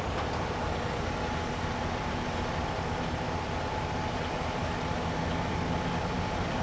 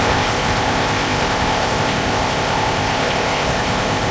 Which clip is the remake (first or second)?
second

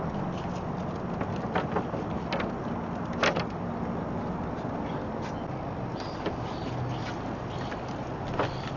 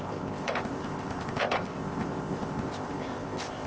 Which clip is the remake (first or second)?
second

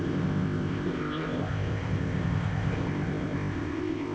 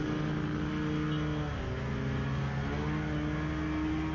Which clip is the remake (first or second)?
first